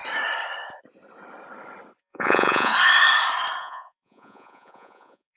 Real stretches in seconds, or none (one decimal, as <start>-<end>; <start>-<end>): 0.0-2.0; 2.7-3.6